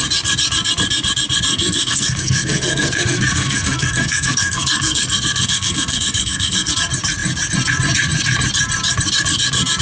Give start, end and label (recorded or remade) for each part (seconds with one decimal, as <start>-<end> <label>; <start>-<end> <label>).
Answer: 0.0-1.5 recorded; 1.5-6.7 remade; 6.7-9.8 recorded